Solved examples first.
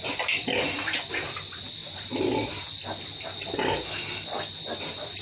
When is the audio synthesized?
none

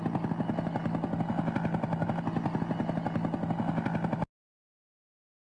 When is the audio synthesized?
none